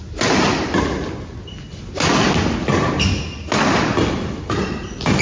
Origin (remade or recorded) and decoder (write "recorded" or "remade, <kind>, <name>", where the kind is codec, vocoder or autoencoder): recorded